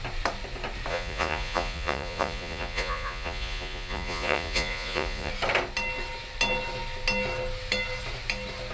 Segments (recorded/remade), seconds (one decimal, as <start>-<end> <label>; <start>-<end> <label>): 0.0-0.9 recorded; 0.9-5.3 remade; 5.3-8.7 recorded